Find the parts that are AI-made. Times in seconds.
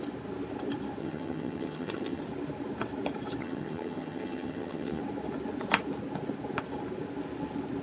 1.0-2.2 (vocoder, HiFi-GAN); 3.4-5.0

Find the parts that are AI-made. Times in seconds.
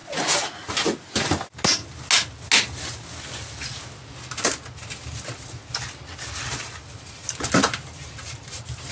none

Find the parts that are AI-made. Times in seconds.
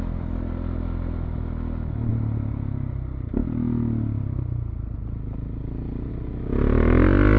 none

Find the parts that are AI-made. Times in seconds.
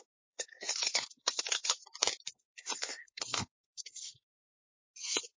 0.0-1.8 (codec, SNAC); 2.3-5.4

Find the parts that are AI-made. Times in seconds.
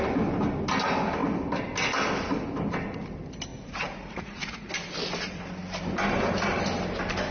3.5-4.7 (vocoder, Vocos)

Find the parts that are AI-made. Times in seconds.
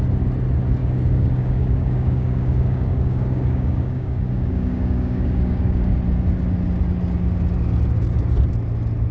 0.8-5.9 (codec, DAC)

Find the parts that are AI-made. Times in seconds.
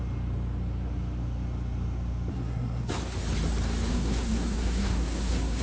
2.3-2.9 (codec, SNAC); 3.9-5.6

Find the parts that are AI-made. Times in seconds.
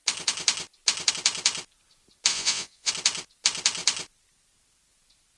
2.3-2.9 (vocoder, Vocos)